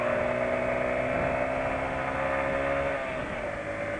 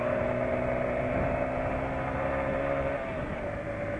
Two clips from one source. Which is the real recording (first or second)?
first